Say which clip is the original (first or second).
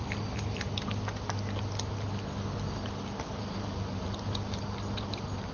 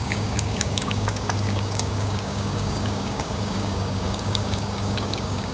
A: first